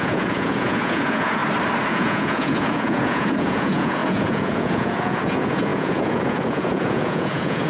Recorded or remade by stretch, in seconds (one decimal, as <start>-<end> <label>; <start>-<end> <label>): 0.0-1.4 remade; 1.4-1.9 recorded; 1.9-7.7 remade